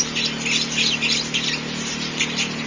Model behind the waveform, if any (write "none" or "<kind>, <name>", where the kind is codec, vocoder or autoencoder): none